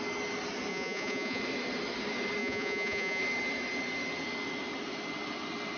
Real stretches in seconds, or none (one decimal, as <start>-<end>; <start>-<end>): 0.0-0.7; 1.4-2.4; 3.2-5.8